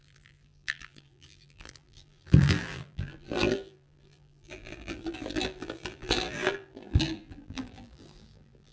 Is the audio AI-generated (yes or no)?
yes